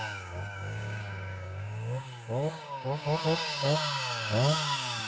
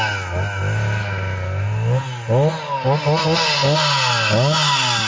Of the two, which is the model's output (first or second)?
first